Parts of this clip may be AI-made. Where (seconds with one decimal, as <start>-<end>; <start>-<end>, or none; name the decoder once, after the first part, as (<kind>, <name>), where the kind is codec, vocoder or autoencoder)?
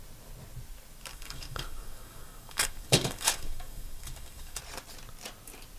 1.1-4.6 (codec, DAC)